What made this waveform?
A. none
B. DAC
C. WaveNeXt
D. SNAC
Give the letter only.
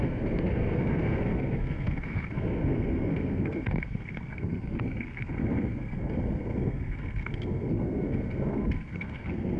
D